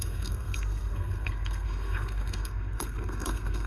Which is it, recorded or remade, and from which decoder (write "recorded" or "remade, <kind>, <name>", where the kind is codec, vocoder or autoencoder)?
remade, codec, SNAC